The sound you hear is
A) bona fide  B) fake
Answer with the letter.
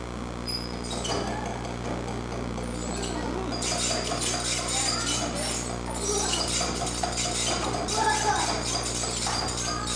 A